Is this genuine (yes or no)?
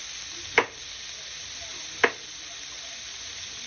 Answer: yes